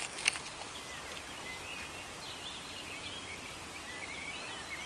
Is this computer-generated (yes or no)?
no